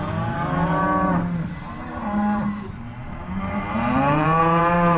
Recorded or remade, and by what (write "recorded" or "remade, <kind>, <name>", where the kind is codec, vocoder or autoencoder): remade, vocoder, BigVGAN v2